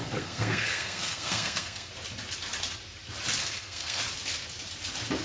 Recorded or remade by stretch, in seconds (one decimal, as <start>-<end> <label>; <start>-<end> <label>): 0.0-1.9 remade; 1.9-3.4 recorded; 3.4-4.0 remade; 4.0-5.2 recorded